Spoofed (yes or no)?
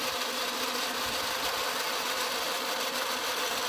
yes